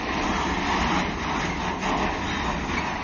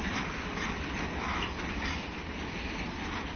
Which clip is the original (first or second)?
first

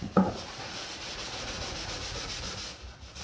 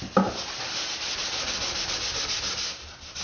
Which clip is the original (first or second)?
second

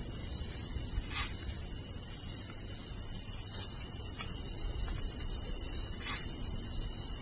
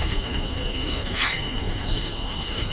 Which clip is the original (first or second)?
first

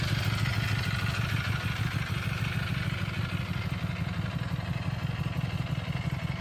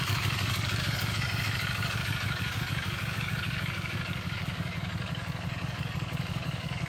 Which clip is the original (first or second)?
first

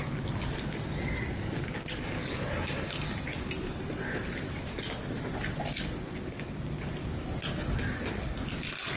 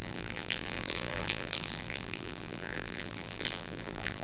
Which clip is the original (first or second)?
first